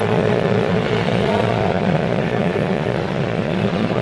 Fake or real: fake